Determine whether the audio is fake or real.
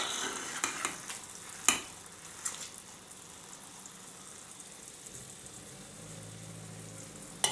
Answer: real